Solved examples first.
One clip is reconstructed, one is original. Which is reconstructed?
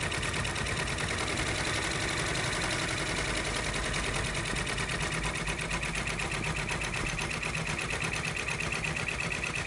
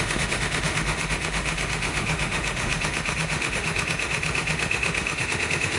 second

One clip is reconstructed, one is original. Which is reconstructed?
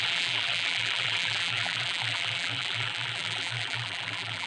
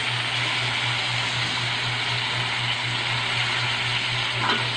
first